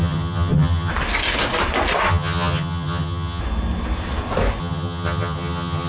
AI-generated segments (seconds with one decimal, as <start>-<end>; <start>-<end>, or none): 0.0-0.9; 2.1-3.4; 4.6-5.9